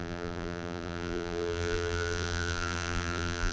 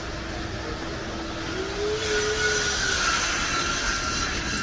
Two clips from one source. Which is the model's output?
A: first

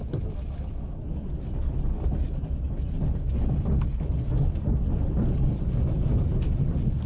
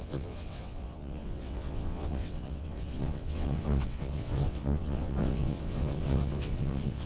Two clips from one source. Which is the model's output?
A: second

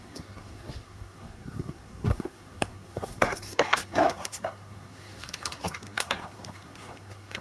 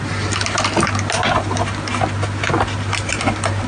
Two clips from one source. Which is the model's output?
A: first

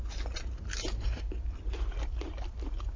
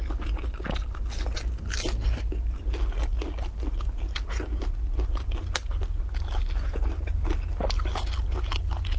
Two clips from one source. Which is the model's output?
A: first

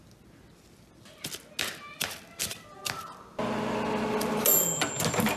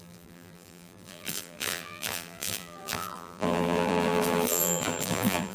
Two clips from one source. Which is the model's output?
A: second